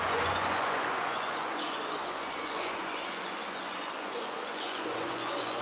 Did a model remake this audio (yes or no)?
yes